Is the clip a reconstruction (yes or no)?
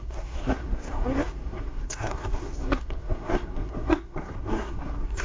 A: yes